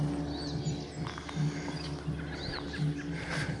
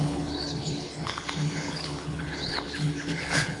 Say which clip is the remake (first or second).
second